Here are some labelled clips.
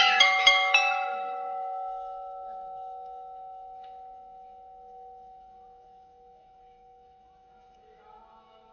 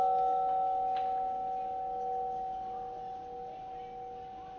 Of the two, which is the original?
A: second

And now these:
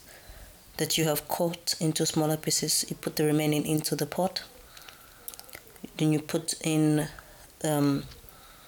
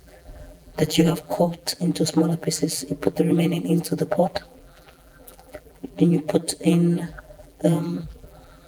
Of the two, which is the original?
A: first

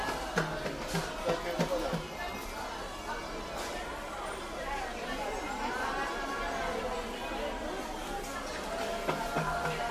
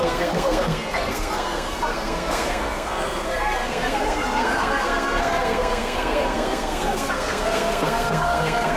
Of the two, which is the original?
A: first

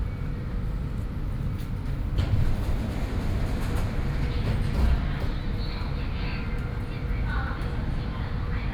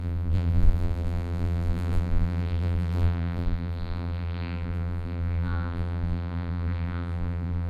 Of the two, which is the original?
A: first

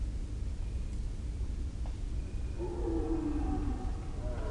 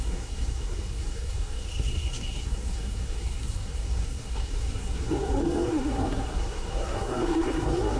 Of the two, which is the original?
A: first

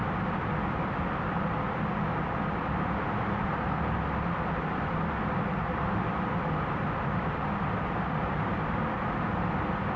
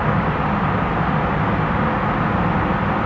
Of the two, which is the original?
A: second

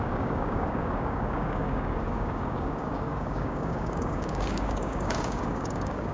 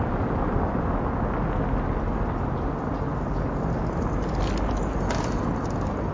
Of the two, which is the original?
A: second